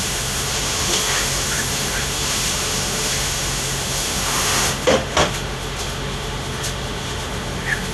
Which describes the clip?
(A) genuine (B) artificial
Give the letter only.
B